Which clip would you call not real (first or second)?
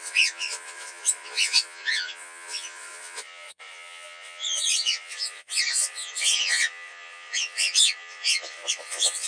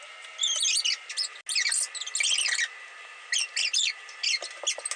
first